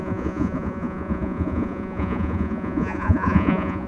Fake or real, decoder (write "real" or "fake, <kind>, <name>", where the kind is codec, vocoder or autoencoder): fake, vocoder, Vocos